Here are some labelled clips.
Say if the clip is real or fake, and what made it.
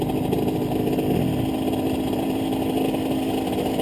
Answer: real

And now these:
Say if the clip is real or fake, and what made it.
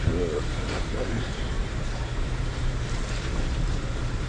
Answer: fake, vocoder, BigVGAN v2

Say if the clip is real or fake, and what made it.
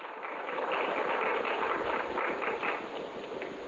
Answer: real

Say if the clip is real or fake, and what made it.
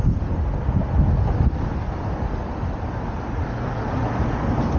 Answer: real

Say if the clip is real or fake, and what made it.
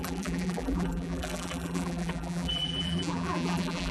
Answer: fake, vocoder, BigVGAN v2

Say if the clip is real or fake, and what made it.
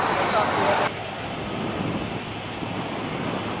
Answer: real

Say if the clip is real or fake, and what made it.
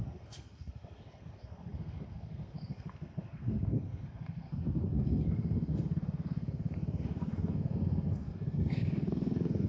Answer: fake, codec, SNAC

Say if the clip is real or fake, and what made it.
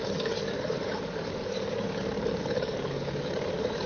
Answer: fake, codec, DAC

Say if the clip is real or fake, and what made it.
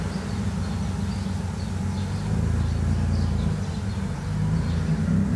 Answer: real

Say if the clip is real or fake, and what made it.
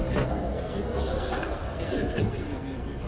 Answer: fake, codec, SNAC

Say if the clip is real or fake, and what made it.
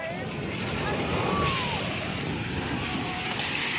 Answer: fake, vocoder, BigVGAN v2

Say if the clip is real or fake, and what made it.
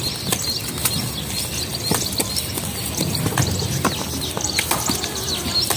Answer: real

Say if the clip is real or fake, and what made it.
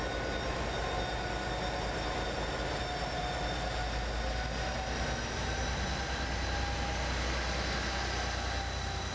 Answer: real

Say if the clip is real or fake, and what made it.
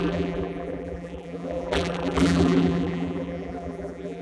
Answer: fake, vocoder, BigVGAN v2